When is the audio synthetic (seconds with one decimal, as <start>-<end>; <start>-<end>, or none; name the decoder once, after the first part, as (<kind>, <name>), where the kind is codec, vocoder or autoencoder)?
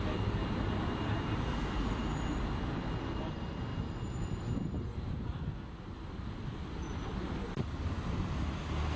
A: 7.4-8.0 (vocoder, BigVGAN v2)